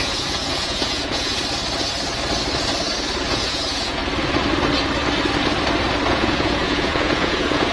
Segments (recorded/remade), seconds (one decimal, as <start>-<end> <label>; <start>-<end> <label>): 0.0-1.4 remade; 1.4-3.3 recorded; 3.3-4.0 remade; 4.0-6.1 recorded; 6.1-7.7 remade